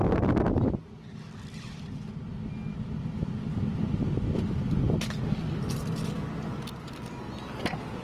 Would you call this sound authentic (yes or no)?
yes